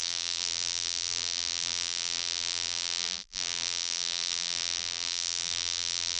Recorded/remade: remade